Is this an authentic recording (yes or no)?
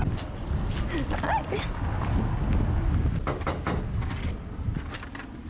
yes